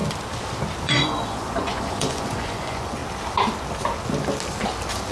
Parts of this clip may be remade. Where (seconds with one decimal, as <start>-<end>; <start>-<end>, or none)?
0.8-3.0